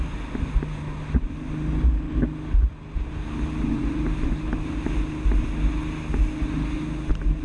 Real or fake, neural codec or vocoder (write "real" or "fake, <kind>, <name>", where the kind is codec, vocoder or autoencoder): real